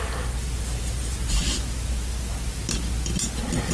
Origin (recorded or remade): recorded